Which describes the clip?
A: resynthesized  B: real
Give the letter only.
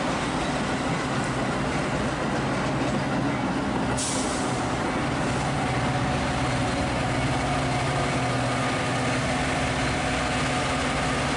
B